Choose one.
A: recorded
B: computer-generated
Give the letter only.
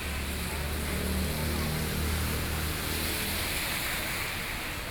A